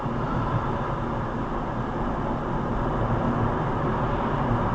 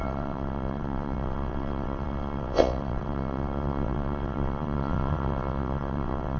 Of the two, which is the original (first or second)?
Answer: first